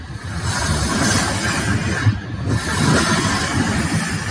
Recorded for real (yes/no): yes